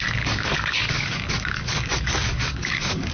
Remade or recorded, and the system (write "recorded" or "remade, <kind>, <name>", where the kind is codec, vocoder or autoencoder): remade, codec, DAC